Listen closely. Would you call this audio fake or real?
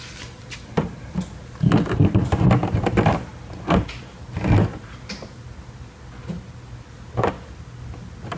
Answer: real